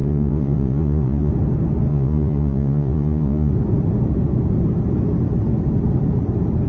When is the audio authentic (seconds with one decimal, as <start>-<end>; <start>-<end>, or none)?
1.3-1.9; 3.5-6.7